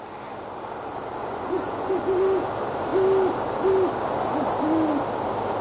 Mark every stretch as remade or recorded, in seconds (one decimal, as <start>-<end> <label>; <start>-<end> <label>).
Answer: 0.0-1.2 recorded; 1.2-1.9 remade; 1.9-5.6 recorded